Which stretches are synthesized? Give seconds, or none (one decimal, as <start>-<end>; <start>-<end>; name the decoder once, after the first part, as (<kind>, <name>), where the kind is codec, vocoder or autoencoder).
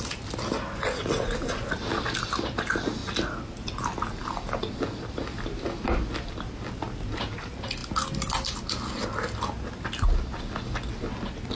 none